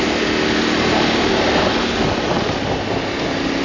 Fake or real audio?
real